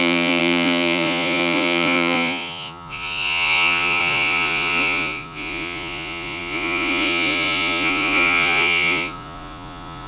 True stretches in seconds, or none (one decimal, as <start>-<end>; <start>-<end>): none

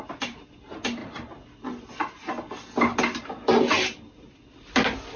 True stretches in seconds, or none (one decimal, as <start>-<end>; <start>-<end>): 0.0-5.2

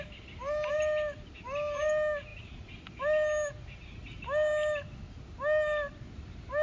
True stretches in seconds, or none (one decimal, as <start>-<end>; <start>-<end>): 0.0-6.6

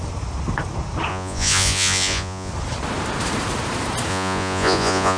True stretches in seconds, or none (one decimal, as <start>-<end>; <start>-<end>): 0.0-1.1; 2.5-4.1

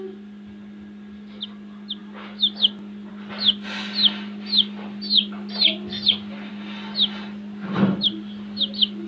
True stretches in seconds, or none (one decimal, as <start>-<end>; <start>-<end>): 0.0-9.1

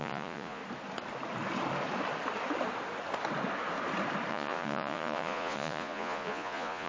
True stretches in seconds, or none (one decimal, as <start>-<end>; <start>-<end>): 0.6-4.3